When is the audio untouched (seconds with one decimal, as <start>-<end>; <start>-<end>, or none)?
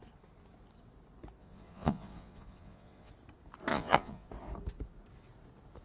0.0-1.4; 3.1-3.7; 4.3-5.8